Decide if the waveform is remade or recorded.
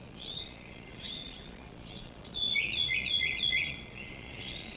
remade